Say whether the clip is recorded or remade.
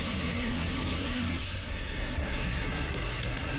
remade